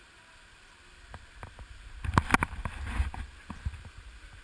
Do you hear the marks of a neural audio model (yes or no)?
no